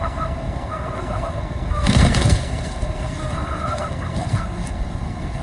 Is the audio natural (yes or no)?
no